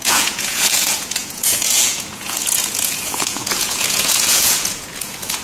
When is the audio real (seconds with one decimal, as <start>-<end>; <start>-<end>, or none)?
none

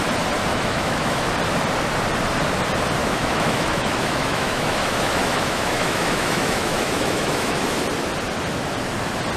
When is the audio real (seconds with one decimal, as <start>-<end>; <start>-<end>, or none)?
0.0-0.5; 1.3-3.0; 7.8-9.4

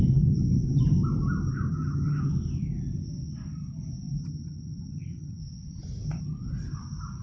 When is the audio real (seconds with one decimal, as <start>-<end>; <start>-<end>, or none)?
0.0-1.7; 2.3-4.2; 5.4-7.2

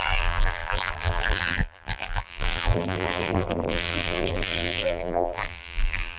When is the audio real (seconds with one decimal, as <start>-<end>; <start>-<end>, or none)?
none

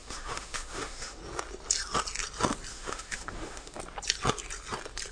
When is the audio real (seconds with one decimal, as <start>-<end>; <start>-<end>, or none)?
1.2-2.7; 3.8-5.1

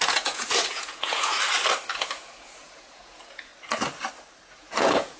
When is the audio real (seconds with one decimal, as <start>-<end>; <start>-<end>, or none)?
1.3-1.9; 3.5-4.5

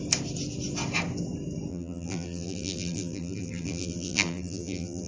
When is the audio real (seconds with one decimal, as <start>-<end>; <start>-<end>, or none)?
0.0-1.7

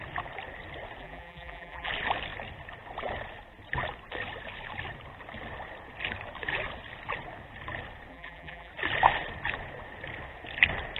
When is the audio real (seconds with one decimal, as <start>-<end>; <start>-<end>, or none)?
0.0-1.0; 1.9-8.1; 8.7-11.0